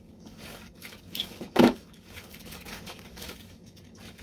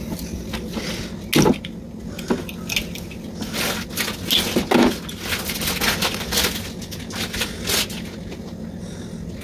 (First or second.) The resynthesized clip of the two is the first